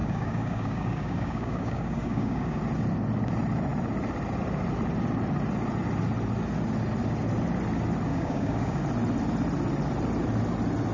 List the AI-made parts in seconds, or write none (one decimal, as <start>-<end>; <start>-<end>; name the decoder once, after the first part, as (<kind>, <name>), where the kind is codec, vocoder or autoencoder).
0.0-2.6 (codec, DAC); 8.1-8.8